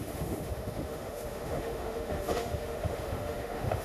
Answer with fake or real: fake